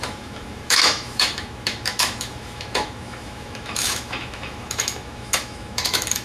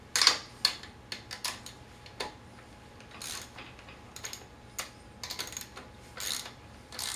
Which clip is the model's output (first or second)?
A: first